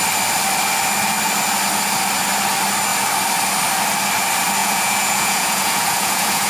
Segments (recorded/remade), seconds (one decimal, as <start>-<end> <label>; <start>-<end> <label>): 0.0-4.6 recorded; 4.6-6.5 remade